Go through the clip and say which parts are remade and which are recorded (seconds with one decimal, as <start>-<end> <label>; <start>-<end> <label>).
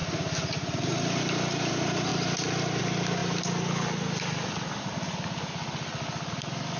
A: 0.0-6.8 recorded